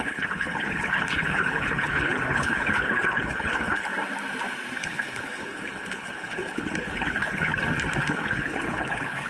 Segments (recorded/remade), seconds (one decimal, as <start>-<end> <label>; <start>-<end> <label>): 0.0-3.9 remade; 3.9-4.8 recorded; 4.8-7.5 remade; 7.5-8.0 recorded; 8.0-9.3 remade

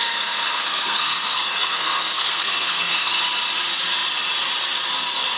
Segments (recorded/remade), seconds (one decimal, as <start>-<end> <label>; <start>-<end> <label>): 0.0-3.2 remade; 3.2-5.4 recorded

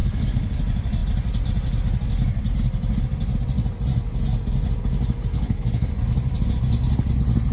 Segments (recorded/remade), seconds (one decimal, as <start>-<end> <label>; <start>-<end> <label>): 0.0-0.6 remade; 0.6-5.3 recorded; 5.3-5.9 remade; 5.9-7.5 recorded

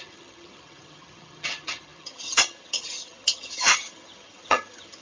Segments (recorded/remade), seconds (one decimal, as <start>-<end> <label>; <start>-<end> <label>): 0.0-5.0 remade